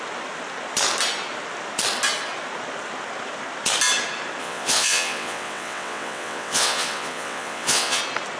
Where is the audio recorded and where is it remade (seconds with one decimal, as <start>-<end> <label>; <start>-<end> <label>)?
0.0-4.4 recorded; 4.4-8.0 remade; 8.0-8.4 recorded